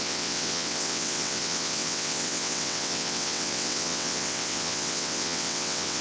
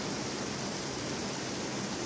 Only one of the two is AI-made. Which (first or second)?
first